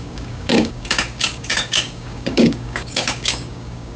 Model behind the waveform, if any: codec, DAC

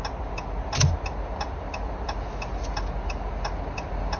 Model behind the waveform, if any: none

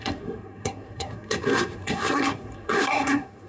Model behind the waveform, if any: codec, SNAC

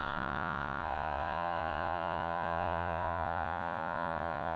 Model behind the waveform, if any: vocoder, Vocos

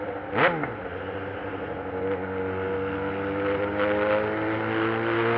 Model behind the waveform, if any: none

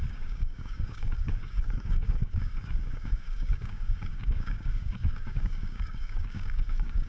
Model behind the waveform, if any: codec, DAC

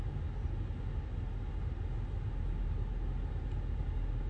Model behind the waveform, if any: none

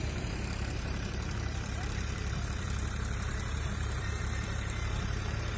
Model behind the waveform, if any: vocoder, BigVGAN v2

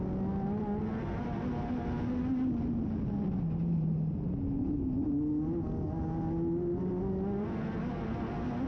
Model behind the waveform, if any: none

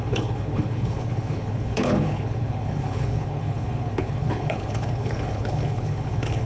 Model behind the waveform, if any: codec, HILCodec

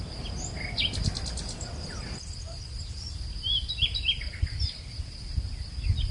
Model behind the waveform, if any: none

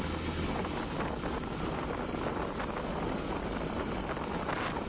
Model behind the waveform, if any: none